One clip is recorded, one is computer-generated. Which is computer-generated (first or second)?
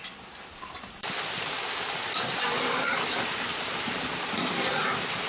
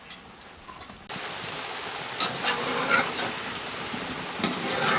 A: first